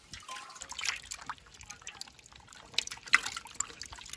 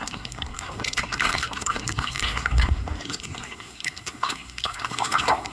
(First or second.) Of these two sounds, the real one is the first